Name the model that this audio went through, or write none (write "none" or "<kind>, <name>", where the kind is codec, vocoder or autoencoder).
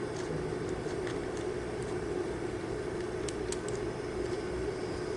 none